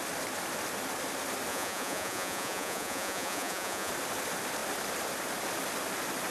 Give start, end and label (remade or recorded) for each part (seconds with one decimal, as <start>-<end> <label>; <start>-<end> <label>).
0.0-1.5 recorded; 1.5-3.9 remade; 3.9-6.3 recorded

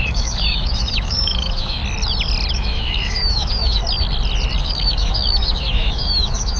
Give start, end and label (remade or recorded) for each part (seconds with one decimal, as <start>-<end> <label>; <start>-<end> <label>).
0.0-1.8 remade; 1.8-2.5 recorded; 2.5-3.8 remade; 3.8-4.6 recorded; 4.6-6.6 remade

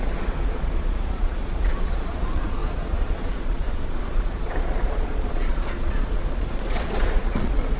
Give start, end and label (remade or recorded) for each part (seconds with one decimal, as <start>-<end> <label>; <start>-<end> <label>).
0.0-7.8 remade

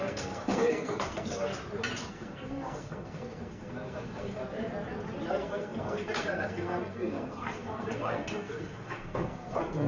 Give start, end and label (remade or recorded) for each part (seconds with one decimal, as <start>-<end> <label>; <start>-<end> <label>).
0.0-1.5 remade; 1.5-2.1 recorded; 2.1-4.4 remade; 4.4-5.3 recorded; 5.3-9.9 remade

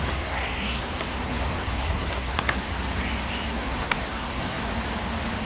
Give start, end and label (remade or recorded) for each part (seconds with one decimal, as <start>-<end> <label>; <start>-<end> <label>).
0.0-2.7 remade; 2.7-3.5 recorded; 3.5-4.6 remade; 4.6-5.4 recorded

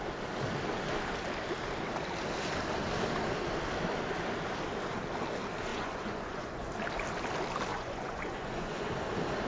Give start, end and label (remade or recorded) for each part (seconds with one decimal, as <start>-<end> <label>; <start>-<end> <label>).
0.0-5.7 recorded; 5.7-6.7 remade; 6.7-7.7 recorded; 7.7-8.9 remade; 8.9-9.5 recorded

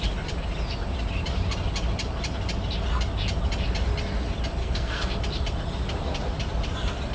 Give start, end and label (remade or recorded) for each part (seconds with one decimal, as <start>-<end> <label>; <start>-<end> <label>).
0.0-4.6 recorded; 4.6-5.2 remade; 5.2-7.1 recorded